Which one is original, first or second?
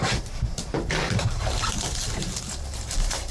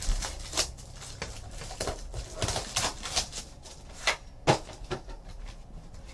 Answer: second